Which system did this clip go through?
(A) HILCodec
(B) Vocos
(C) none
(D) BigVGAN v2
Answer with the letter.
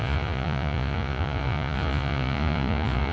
B